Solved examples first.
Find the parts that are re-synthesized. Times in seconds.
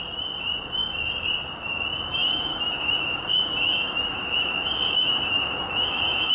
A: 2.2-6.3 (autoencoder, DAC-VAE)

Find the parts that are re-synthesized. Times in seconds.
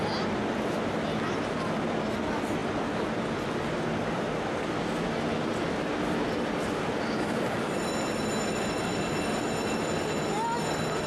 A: none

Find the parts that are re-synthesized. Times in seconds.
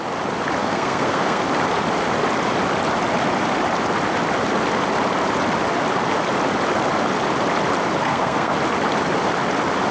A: 0.6-1.4 (codec, SNAC); 8.0-8.5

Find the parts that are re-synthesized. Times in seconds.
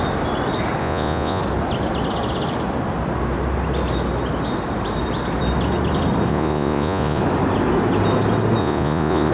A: 0.8-1.4 (vocoder, Vocos); 6.3-7.2; 8.6-9.3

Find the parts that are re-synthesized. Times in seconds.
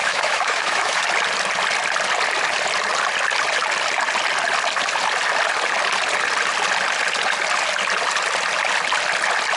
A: 0.0-1.0 (autoencoder, DAC-VAE)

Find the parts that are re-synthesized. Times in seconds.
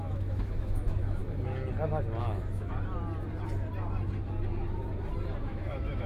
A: 0.0-1.2 (autoencoder, DAC-VAE); 2.2-2.7; 5.4-6.1